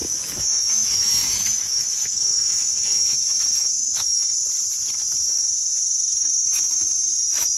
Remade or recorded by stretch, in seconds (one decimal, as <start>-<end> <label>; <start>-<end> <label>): 0.0-4.4 remade; 4.4-5.3 recorded; 5.3-7.6 remade